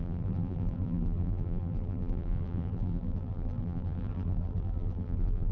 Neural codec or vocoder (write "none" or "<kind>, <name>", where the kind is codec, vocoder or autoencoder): vocoder, BigVGAN v2